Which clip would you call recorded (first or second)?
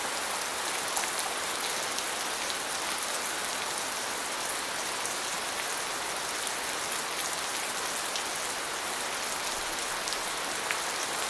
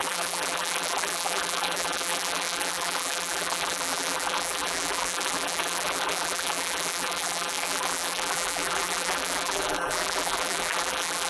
first